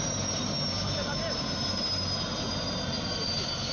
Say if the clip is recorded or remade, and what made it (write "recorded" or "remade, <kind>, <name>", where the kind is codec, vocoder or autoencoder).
recorded